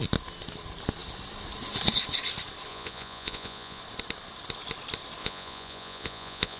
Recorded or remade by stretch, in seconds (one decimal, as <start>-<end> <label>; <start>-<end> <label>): 0.0-2.7 recorded; 2.7-3.8 remade; 3.8-5.2 recorded; 5.2-6.6 remade